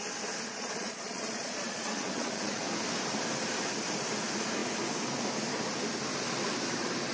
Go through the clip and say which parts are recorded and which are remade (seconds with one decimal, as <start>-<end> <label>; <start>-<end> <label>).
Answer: 0.0-0.5 recorded; 0.5-2.6 remade; 2.6-7.1 recorded